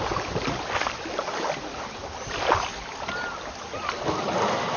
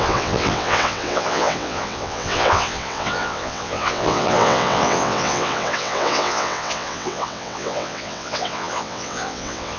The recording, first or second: first